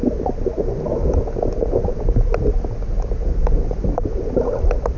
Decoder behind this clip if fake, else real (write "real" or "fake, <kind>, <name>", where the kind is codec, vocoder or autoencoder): real